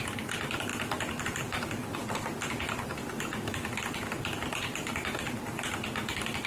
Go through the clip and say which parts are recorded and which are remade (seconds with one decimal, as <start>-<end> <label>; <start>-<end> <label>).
0.0-0.7 recorded; 0.7-1.9 remade; 1.9-6.5 recorded